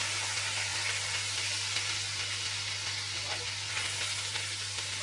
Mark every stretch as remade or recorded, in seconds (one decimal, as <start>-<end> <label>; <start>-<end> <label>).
0.0-5.0 recorded